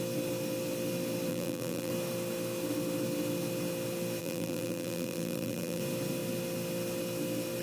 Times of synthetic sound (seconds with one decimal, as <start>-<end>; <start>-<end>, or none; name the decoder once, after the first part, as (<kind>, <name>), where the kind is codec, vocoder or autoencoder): 1.3-1.9 (vocoder, BigVGAN v2); 4.2-5.8